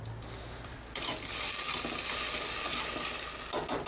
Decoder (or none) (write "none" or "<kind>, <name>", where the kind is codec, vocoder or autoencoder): none